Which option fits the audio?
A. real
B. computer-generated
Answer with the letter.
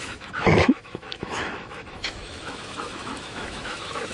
B